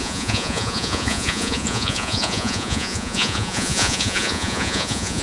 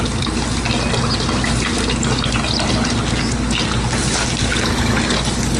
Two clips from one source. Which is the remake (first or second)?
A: first